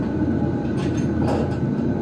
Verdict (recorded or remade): remade